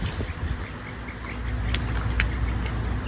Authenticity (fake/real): real